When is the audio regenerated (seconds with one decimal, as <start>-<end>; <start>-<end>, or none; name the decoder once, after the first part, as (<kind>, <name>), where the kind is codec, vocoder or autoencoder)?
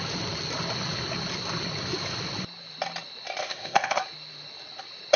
3.4-4.0 (codec, ZipCodec)